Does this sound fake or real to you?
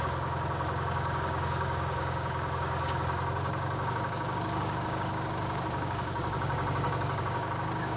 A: fake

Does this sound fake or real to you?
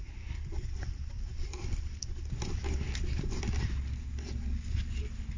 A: real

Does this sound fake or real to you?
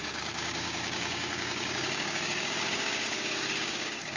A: fake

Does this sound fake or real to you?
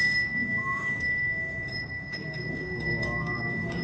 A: fake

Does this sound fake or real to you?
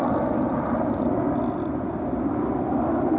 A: real